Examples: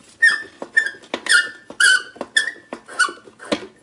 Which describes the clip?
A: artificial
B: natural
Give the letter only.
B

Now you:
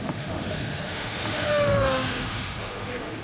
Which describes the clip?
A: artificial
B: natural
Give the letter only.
A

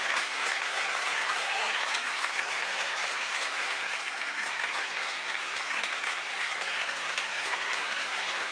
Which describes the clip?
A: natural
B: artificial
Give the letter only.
B